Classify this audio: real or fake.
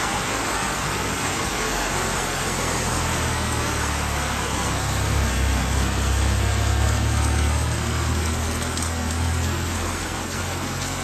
fake